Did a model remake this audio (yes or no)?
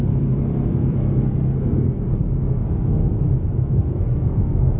yes